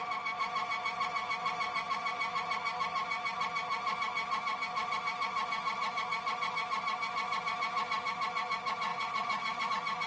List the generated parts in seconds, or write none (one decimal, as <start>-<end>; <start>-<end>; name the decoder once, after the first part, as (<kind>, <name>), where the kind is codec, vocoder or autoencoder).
8.9-9.7 (vocoder, WaveNeXt)